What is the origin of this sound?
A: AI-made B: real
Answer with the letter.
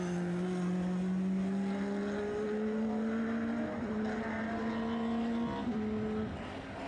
B